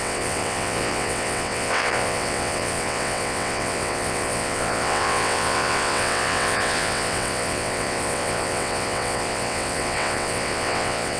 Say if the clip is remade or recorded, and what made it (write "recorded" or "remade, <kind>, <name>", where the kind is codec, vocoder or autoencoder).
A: remade, vocoder, WaveNeXt